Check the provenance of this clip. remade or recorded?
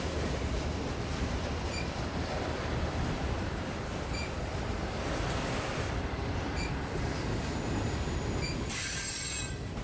remade